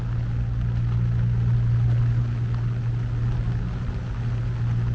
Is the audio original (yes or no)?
yes